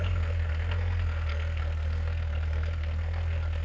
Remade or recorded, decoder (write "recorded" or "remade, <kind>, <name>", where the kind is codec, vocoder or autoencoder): remade, codec, SNAC